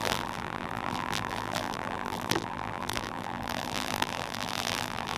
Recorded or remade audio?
remade